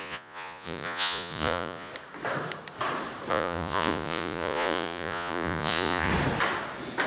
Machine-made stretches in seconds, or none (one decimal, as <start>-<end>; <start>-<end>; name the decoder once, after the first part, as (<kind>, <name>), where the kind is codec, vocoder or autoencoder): 0.0-1.9 (vocoder, Vocos); 3.3-6.1

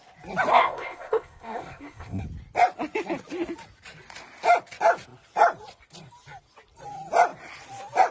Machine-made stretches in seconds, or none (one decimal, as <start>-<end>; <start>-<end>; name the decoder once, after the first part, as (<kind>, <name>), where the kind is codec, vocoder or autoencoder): 0.5-2.2 (codec, ZipCodec)

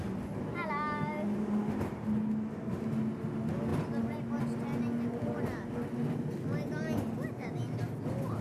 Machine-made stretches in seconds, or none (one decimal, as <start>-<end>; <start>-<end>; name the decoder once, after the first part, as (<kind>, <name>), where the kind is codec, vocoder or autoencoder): none

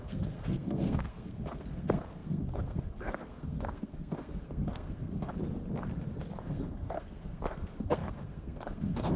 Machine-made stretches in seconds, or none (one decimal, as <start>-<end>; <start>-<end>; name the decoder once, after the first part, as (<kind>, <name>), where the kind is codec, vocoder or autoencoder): 0.0-5.3 (codec, SNAC); 6.4-9.2

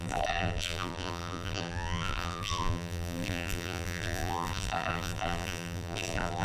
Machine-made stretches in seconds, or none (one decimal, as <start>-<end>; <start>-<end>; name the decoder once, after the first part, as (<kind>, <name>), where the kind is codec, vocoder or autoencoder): 0.0-6.4 (vocoder, BigVGAN v2)

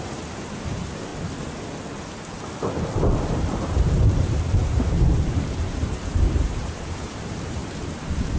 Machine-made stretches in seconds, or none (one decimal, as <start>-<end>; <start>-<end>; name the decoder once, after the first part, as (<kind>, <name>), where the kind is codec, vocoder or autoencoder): 0.0-1.1 (vocoder, BigVGAN v2); 3.2-7.6